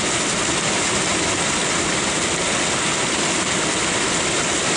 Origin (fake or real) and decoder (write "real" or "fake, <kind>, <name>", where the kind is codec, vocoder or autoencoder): real